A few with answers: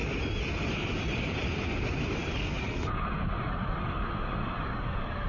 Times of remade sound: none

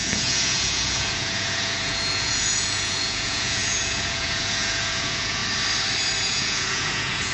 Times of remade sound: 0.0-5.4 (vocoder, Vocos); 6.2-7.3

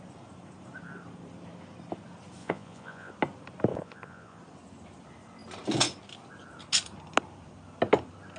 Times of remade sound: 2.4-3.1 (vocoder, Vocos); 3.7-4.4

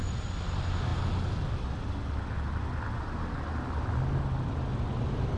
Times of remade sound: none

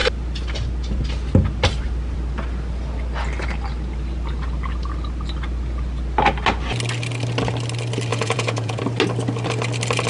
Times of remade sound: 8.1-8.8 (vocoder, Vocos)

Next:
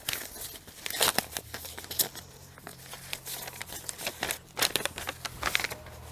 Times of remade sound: none

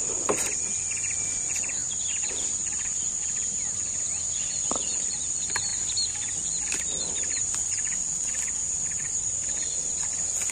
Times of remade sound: none

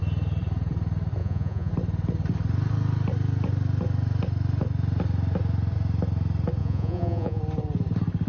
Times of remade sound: 1.2-1.7 (vocoder, Vocos); 6.6-7.4